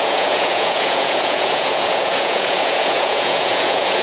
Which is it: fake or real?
fake